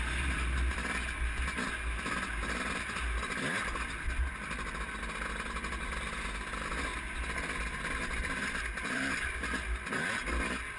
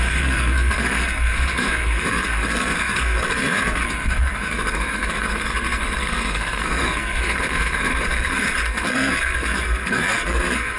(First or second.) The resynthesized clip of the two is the second